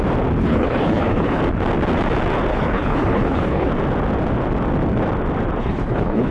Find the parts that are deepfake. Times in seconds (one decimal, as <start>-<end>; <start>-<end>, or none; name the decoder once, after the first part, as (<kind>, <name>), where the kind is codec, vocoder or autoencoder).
0.4-1.4 (codec, HILCodec); 2.5-3.7; 5.6-6.3